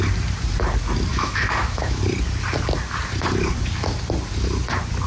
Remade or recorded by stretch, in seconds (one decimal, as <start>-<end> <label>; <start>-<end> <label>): 0.0-1.1 recorded; 1.1-2.0 remade; 2.0-5.1 recorded